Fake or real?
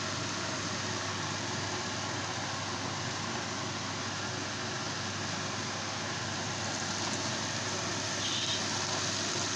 real